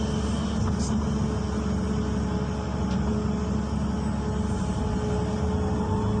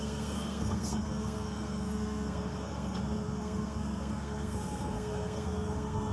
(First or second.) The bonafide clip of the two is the first